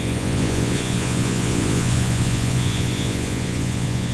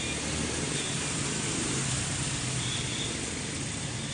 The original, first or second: second